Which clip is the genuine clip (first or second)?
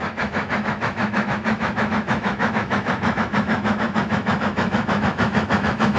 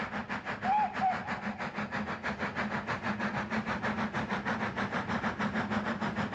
second